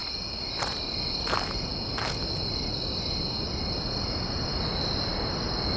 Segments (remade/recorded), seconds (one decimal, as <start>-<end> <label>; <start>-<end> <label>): 0.0-5.8 recorded